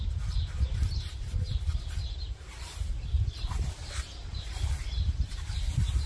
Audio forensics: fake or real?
fake